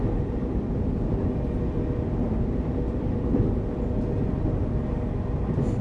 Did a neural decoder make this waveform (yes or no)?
no